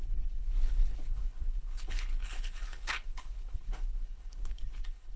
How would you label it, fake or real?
fake